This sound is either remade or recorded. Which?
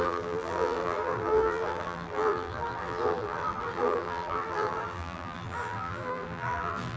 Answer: remade